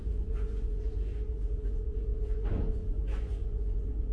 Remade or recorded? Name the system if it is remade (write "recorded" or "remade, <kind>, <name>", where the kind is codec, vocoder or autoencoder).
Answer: remade, vocoder, Vocos